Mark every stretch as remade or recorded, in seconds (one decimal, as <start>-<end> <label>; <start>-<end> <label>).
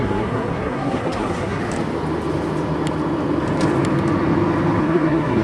0.0-1.6 remade; 1.6-4.8 recorded; 4.8-5.4 remade